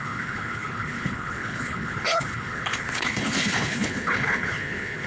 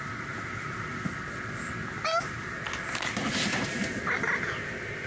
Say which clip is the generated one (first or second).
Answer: first